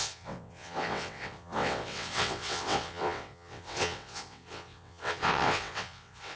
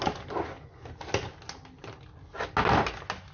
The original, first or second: second